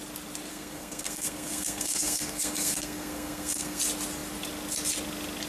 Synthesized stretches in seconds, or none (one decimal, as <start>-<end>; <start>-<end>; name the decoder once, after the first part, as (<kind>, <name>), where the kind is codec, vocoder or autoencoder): 0.5-3.8 (codec, SNAC)